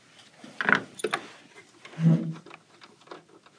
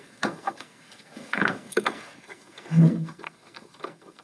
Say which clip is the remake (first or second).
second